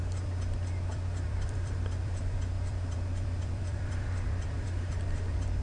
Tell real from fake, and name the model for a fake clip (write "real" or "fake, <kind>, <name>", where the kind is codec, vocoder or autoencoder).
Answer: fake, vocoder, BigVGAN v2